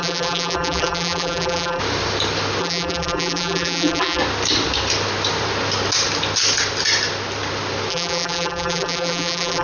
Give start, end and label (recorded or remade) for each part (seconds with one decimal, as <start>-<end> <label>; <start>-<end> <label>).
0.0-1.8 remade; 1.8-2.6 recorded; 2.6-4.2 remade; 4.2-7.9 recorded; 7.9-9.6 remade